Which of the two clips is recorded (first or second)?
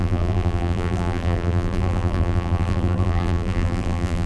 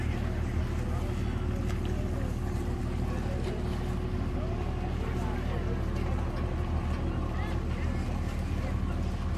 second